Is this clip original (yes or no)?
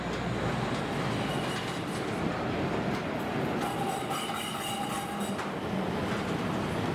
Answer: yes